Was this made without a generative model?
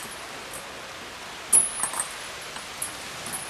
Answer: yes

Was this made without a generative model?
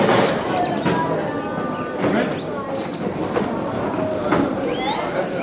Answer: yes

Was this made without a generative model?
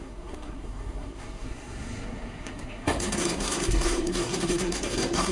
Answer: no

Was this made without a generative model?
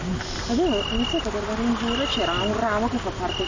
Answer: yes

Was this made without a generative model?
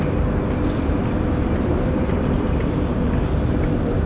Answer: yes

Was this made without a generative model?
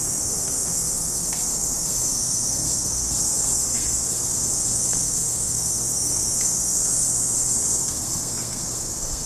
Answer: no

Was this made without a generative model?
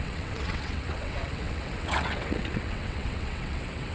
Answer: no